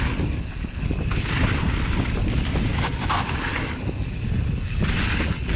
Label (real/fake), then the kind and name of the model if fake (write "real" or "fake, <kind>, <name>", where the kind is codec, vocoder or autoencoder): real